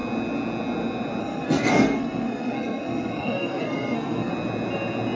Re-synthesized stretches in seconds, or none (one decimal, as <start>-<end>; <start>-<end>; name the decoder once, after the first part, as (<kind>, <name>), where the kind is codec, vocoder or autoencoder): 1.2-4.3 (codec, SNAC)